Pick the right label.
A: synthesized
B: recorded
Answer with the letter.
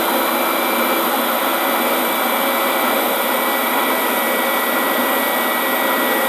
B